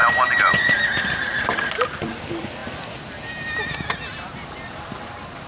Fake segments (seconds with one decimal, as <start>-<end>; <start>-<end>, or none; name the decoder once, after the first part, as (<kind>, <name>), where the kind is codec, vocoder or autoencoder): 0.0-2.6 (vocoder, BigVGAN v2)